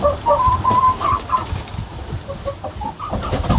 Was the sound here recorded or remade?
recorded